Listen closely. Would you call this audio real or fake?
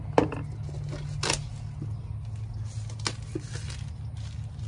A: real